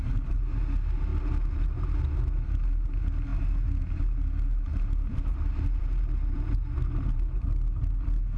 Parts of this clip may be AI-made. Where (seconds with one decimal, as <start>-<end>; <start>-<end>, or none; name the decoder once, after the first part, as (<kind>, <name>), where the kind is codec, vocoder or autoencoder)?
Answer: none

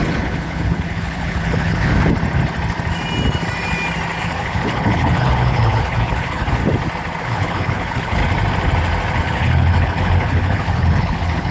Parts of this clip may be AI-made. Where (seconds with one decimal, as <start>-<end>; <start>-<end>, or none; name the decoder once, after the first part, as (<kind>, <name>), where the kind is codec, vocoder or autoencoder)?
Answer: 0.0-1.9 (codec, HILCodec); 4.2-6.6; 7.2-8.2; 9.2-11.5

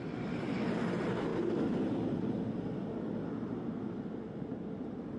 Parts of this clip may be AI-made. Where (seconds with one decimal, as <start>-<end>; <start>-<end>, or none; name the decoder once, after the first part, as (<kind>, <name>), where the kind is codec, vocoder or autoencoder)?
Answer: none